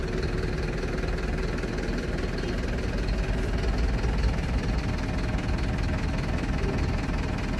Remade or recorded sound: recorded